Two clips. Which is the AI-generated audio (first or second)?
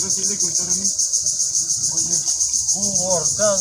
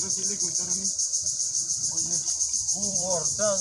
second